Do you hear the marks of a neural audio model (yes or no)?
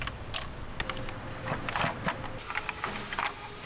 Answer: no